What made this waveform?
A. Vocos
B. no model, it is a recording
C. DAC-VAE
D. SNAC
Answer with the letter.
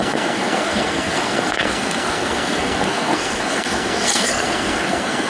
D